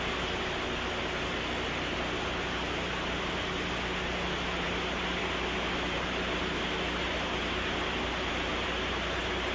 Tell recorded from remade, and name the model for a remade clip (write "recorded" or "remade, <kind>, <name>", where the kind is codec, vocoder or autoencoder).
recorded